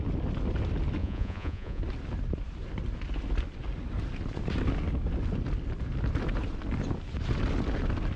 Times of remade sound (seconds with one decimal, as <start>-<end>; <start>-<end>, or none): 1.0-1.8